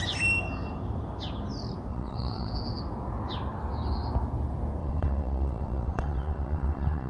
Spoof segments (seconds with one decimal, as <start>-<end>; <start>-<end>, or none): 1.9-2.5; 4.8-7.1